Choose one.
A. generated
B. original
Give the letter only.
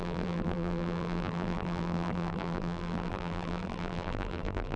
A